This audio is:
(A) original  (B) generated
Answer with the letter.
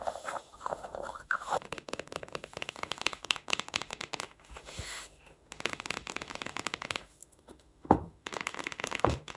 B